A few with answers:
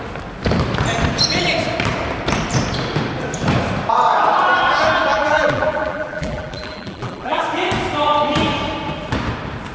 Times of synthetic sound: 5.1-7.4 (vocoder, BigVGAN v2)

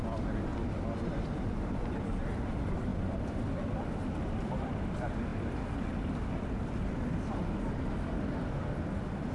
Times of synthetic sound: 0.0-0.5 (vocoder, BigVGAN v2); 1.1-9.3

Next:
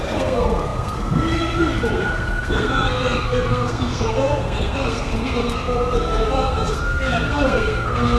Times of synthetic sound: 0.0-8.2 (codec, SNAC)